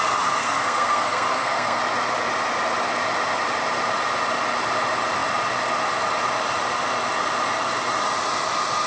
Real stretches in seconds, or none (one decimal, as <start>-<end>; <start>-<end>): 0.0-0.4; 1.8-8.9